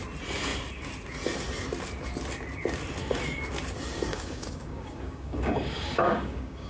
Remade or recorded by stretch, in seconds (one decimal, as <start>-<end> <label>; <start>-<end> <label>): 0.0-4.1 recorded; 4.1-6.7 remade